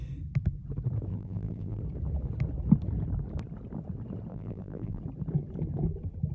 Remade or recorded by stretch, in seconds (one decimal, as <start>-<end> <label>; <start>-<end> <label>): 0.0-1.1 recorded; 1.1-1.8 remade; 1.8-4.3 recorded; 4.3-5.0 remade; 5.0-6.3 recorded